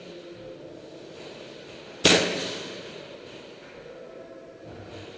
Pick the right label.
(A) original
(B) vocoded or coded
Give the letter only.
A